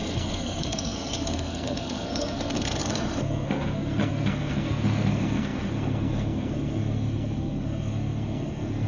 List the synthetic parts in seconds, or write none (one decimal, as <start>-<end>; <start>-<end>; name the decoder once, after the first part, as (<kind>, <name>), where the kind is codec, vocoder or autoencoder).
0.0-8.9 (codec, SNAC)